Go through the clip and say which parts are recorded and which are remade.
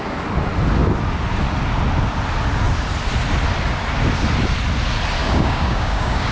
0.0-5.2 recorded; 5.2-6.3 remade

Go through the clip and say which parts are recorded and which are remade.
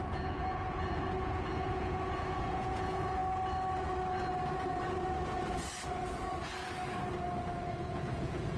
0.0-3.2 remade; 3.2-7.5 recorded; 7.5-8.6 remade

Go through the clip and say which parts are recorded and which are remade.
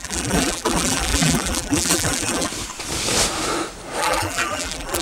0.0-2.5 remade; 2.5-4.0 recorded; 4.0-5.0 remade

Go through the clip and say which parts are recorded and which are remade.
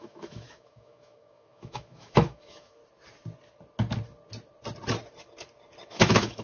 0.0-2.8 remade; 2.8-5.9 recorded; 5.9-6.4 remade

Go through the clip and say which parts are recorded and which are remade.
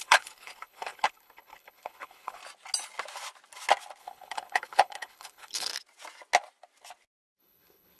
0.0-2.4 remade; 2.4-4.0 recorded; 4.0-5.7 remade; 5.7-7.4 recorded; 7.4-8.0 remade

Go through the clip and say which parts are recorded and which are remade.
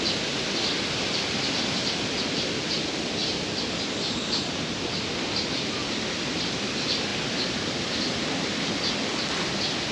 0.0-9.9 recorded